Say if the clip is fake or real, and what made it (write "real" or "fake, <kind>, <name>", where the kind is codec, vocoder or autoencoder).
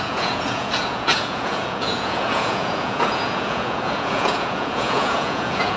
fake, vocoder, Vocos